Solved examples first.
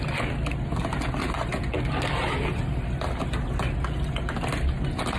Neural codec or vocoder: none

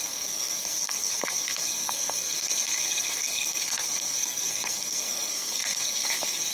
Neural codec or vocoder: codec, SNAC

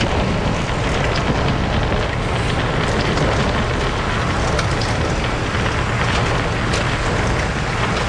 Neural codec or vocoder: none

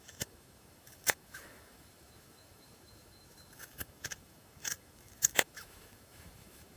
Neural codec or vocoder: autoencoder, DAC-VAE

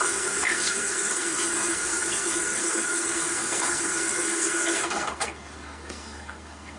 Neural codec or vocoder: codec, SNAC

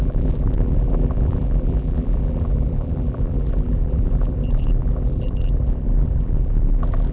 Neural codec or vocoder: vocoder, BigVGAN v2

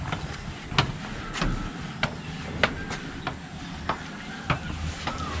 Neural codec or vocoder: none